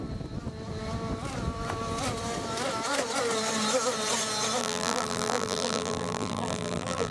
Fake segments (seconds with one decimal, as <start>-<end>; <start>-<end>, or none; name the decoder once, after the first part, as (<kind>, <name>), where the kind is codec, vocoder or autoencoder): 4.6-7.1 (vocoder, BigVGAN v2)